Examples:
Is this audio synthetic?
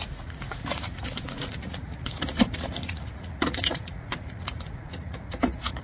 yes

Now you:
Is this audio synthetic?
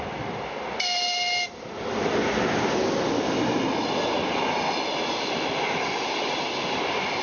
no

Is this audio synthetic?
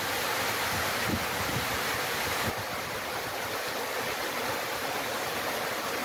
yes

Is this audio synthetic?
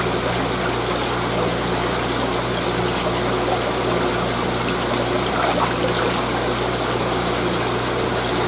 no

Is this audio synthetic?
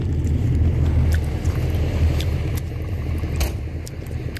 no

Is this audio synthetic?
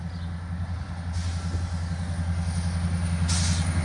no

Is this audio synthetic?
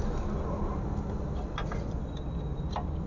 no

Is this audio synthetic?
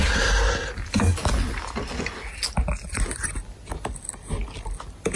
no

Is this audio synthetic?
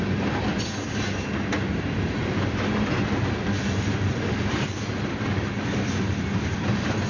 no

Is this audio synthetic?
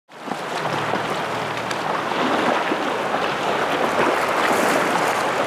no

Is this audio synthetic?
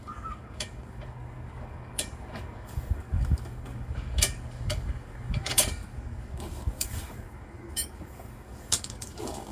yes